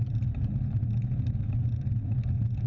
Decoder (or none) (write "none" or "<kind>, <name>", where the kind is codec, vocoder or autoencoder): none